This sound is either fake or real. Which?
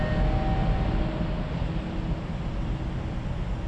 real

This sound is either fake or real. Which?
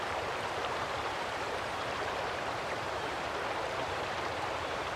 fake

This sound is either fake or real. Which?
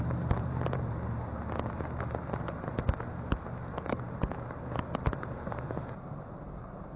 fake